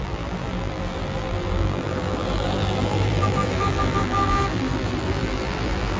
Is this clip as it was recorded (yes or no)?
no